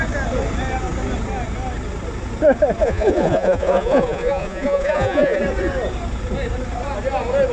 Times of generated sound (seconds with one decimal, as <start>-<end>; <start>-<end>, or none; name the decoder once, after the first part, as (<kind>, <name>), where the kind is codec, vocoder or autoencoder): 2.8-5.4 (vocoder, Vocos)

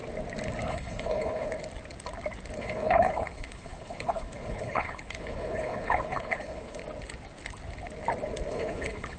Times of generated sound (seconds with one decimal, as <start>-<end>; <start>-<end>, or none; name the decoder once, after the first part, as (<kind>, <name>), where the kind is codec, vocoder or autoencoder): 0.7-1.5 (codec, HILCodec); 2.6-6.8; 8.5-9.2

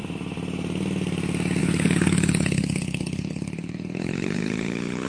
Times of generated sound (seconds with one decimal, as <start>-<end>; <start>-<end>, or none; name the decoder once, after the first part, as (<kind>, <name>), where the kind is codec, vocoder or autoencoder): 1.6-5.1 (codec, HILCodec)

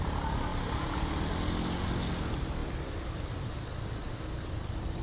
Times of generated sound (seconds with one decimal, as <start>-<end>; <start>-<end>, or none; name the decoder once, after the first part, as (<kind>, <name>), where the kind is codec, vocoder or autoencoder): 2.6-5.0 (vocoder, BigVGAN v2)

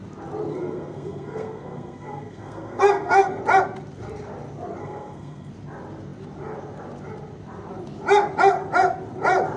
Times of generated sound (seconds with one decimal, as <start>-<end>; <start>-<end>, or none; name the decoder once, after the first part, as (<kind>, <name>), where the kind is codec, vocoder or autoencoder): 0.5-3.4 (codec, SNAC); 4.8-5.5

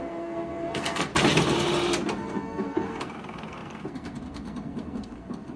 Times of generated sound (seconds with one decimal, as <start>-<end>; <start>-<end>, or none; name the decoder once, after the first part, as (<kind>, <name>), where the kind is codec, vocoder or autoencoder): 0.0-1.1 (codec, SNAC); 2.1-5.6

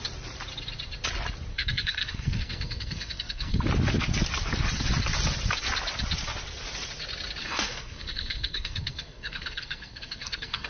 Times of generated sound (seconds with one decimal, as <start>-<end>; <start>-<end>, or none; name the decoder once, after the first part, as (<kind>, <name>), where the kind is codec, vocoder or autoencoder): 1.5-3.6 (codec, SNAC); 7.4-10.7